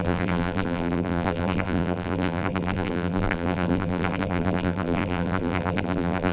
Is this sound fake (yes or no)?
yes